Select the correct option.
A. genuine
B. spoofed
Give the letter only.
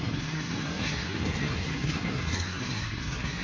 B